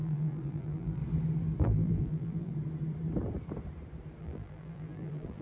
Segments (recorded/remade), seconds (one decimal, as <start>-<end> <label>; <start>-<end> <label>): 0.0-1.0 remade; 1.0-1.6 recorded; 1.6-2.5 remade; 2.5-4.2 recorded; 4.2-5.4 remade